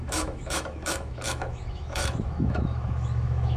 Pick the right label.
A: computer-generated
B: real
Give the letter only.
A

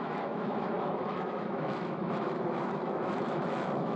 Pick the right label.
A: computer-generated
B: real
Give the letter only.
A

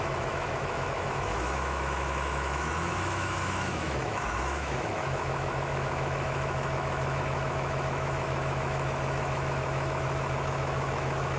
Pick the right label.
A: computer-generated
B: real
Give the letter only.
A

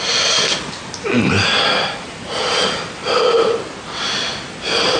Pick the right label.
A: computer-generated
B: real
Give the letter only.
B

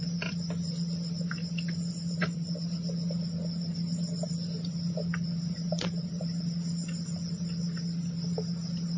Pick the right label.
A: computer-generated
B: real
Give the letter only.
B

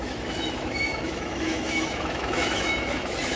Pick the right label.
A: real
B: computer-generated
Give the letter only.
B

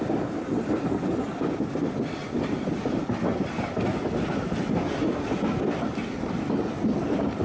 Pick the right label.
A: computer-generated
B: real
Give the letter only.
B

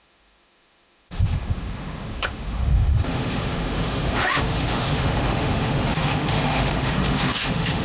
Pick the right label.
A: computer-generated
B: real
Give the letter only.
A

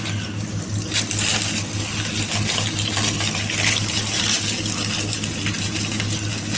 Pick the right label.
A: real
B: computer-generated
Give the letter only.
A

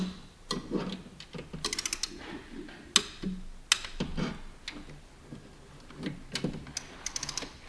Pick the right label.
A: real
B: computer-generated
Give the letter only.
A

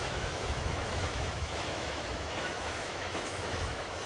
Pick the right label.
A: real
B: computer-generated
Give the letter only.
B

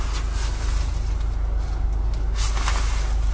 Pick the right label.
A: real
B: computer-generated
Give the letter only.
A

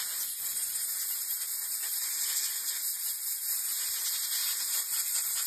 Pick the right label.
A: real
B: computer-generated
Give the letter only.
A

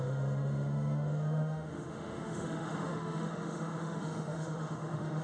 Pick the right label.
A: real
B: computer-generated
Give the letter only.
B